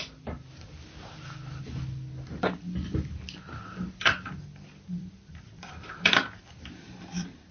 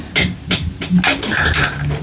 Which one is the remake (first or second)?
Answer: first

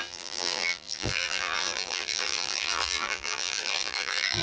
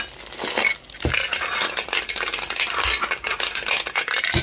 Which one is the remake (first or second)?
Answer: first